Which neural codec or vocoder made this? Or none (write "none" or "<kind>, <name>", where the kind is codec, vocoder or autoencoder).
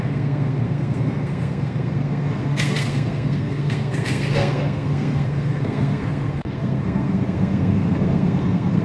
codec, SNAC